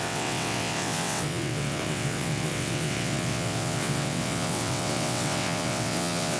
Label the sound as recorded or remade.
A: remade